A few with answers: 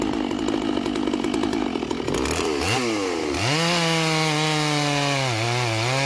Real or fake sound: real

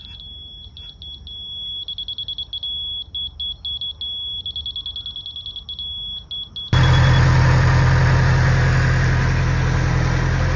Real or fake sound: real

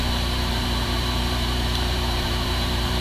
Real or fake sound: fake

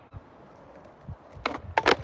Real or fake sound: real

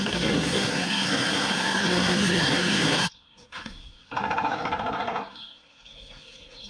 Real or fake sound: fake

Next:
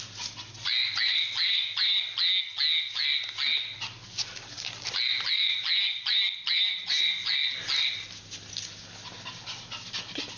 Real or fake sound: real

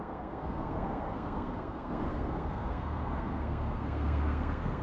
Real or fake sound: fake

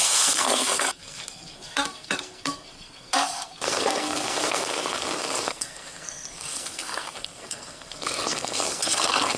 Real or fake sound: fake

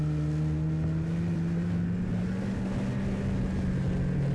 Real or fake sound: real